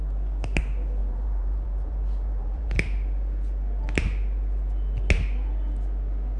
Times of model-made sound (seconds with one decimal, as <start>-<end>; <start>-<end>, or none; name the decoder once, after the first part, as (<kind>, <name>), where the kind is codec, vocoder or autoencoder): 1.0-2.8 (vocoder, BigVGAN v2)